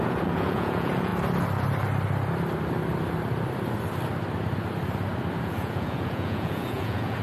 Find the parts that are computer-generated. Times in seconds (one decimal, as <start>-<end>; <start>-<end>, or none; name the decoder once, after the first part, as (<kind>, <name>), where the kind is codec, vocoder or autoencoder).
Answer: 0.0-1.1 (vocoder, Vocos); 5.4-7.2